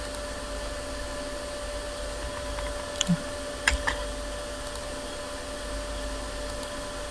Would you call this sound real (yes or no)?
yes